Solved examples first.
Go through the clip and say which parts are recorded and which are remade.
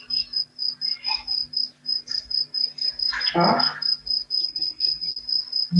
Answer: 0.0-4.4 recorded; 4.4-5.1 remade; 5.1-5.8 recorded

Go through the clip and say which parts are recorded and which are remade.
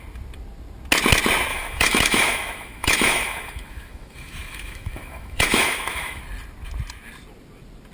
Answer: 0.0-1.5 recorded; 1.5-6.2 remade; 6.2-7.9 recorded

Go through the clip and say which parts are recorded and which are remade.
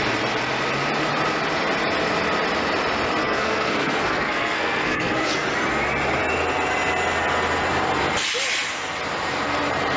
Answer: 0.0-3.2 recorded; 3.2-5.3 remade; 5.3-10.0 recorded